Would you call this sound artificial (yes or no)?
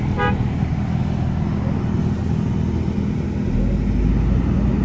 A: no